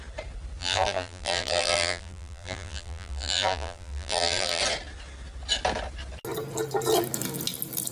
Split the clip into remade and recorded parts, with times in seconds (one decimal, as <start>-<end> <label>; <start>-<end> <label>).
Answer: 0.0-0.6 recorded; 0.6-4.6 remade; 4.6-7.9 recorded